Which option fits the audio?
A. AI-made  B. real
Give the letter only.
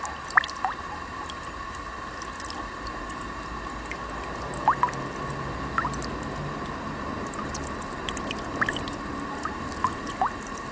B